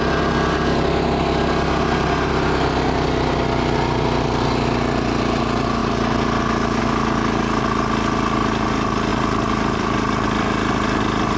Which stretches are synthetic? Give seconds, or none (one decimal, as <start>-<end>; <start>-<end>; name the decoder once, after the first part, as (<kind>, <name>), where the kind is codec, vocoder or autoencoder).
5.8-6.8 (vocoder, BigVGAN v2); 9.1-11.0